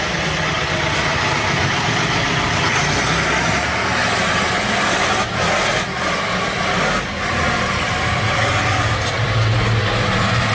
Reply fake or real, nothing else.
real